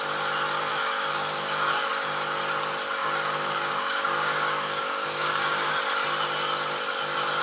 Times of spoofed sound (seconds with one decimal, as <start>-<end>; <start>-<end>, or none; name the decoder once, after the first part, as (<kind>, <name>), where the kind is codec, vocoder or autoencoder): 0.7-1.9 (codec, DAC); 3.0-5.7